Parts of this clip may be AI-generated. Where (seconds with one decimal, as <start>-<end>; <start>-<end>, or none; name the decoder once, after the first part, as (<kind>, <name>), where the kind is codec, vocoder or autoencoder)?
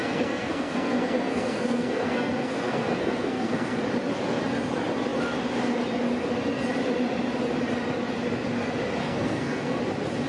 0.0-3.8 (codec, SNAC); 9.0-9.8